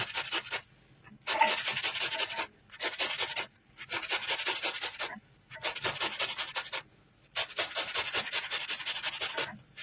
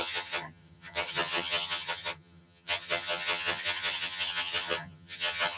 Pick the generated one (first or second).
second